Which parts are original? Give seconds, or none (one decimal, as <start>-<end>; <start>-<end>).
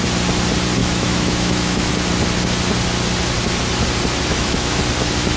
0.0-0.8; 1.9-4.3; 4.8-5.4